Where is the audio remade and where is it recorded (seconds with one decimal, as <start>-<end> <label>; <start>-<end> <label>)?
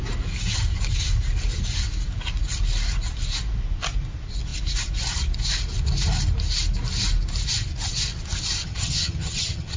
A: 0.0-8.6 recorded; 8.6-9.8 remade